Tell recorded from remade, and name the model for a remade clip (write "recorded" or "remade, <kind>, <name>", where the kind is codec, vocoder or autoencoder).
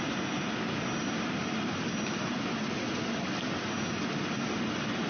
recorded